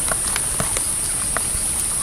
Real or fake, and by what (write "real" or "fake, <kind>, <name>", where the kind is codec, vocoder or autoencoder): real